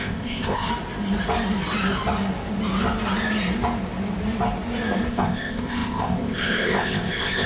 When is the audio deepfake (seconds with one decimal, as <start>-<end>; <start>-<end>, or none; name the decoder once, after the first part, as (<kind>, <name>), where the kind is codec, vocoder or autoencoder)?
0.0-0.7 (codec, ZipCodec); 5.1-7.5